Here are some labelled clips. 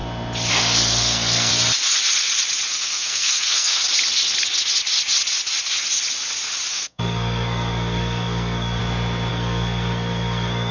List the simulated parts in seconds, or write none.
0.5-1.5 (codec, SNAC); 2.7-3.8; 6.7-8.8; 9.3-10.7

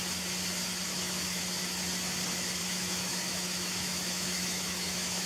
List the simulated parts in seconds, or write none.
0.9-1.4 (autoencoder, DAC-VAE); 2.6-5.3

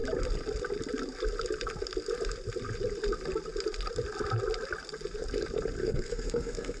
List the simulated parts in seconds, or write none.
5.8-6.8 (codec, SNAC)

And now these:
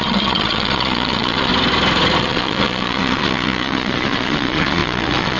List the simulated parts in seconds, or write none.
0.0-1.5 (vocoder, Vocos); 2.2-5.4

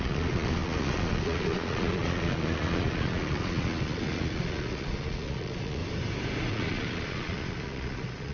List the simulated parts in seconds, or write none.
0.0-5.8 (vocoder, Vocos); 6.5-8.3

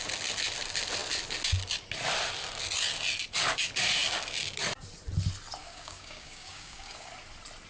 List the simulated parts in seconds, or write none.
5.6-7.1 (codec, DAC)